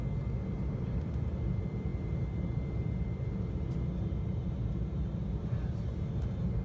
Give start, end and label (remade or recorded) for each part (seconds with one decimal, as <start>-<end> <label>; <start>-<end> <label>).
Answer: 0.0-6.6 recorded